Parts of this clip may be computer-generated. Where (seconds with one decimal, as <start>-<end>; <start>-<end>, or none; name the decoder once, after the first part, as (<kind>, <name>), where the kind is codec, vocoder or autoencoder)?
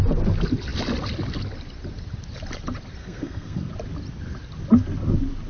3.0-3.7 (codec, SNAC)